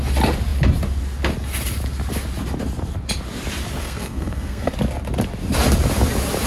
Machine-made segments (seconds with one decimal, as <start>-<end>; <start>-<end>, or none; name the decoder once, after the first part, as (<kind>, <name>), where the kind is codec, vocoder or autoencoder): 3.8-4.7 (codec, SNAC)